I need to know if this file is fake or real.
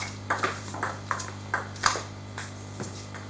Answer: fake